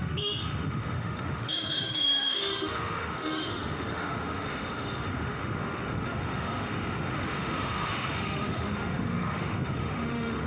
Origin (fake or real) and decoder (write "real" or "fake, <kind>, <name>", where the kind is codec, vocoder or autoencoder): fake, autoencoder, DAC-VAE